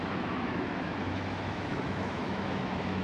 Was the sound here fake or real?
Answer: fake